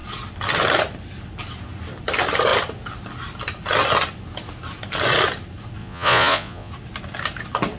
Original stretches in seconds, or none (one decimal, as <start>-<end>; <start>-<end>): 0.0-5.8; 6.7-7.8